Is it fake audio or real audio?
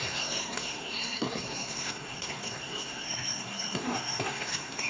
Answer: fake